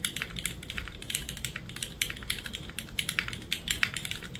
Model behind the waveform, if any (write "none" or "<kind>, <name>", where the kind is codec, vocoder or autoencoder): vocoder, BigVGAN v2